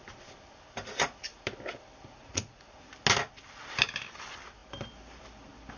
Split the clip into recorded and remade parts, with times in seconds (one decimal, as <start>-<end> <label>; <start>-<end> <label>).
0.0-2.2 recorded; 2.2-2.9 remade; 2.9-5.8 recorded